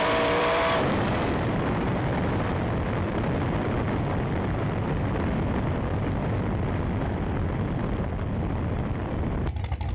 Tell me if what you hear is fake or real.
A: fake